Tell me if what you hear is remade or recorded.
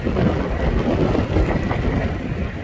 recorded